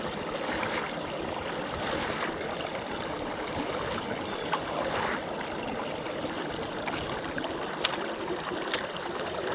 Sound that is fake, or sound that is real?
real